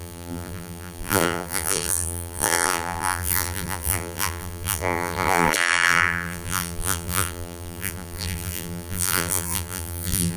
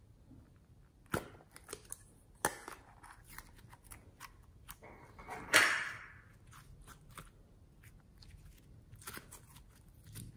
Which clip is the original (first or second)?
second